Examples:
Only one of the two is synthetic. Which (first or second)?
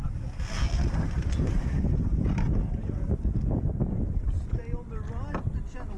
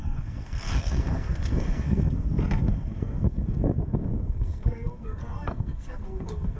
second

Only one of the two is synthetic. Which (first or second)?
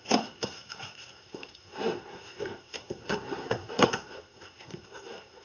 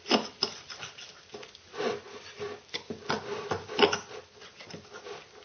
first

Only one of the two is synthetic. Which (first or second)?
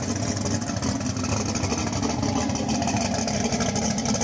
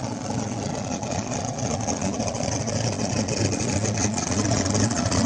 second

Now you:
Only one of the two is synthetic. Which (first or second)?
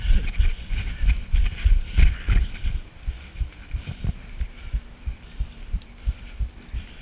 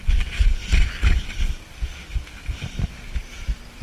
first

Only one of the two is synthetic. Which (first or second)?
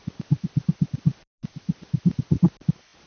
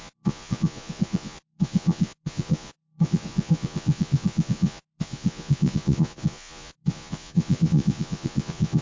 second